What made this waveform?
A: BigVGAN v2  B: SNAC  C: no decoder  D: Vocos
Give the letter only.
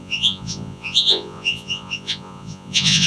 D